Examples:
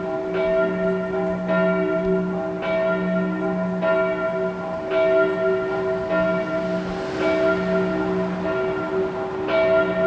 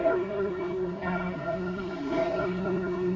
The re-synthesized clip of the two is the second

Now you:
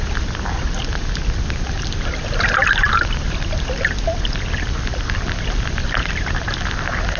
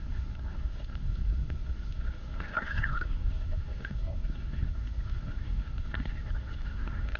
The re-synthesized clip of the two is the second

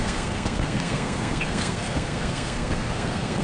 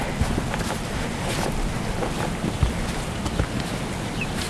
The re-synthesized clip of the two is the first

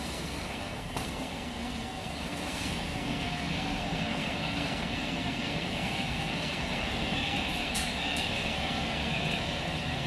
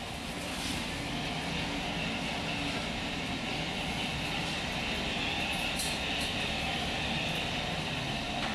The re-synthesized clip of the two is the first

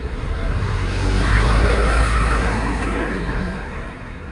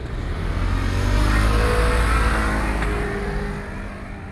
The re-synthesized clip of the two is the first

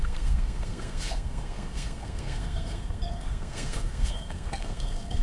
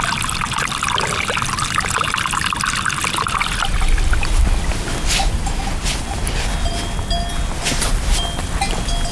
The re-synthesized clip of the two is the first